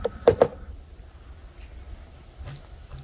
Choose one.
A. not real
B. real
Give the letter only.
B